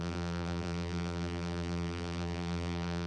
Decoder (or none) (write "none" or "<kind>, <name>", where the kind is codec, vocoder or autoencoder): vocoder, BigVGAN v2